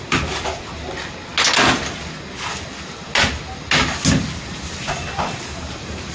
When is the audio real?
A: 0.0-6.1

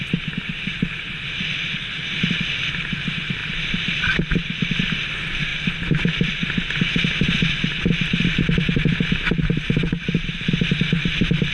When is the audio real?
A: 0.0-11.5

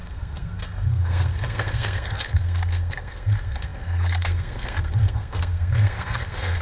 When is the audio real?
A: none

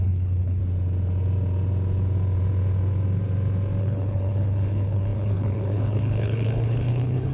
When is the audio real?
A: 0.6-3.8

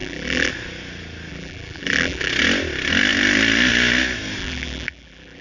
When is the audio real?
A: 0.5-1.3; 2.3-4.4

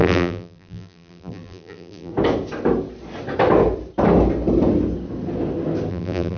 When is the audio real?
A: 2.1-5.9